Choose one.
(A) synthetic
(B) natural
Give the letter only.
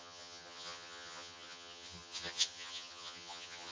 A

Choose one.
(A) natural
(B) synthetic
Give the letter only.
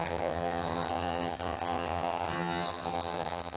B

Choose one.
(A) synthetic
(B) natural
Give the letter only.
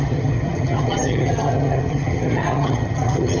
A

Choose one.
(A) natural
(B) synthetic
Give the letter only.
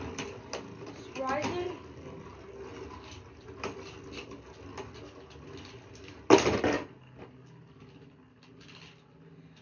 A